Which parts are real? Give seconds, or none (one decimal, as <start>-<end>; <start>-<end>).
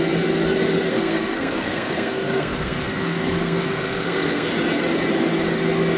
0.0-0.9; 4.5-6.0